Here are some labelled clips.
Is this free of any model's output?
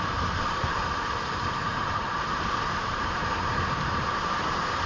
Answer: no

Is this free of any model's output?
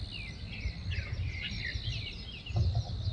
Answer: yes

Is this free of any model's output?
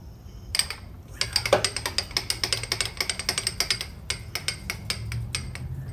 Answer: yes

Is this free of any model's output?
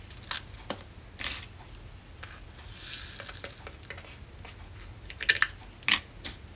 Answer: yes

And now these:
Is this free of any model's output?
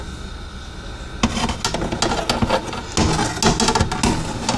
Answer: yes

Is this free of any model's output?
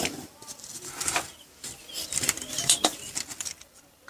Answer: no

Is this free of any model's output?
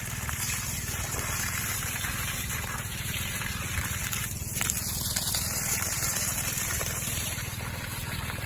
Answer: no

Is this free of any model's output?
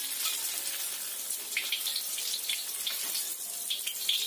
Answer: no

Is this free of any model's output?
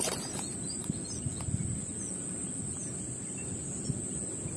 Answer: yes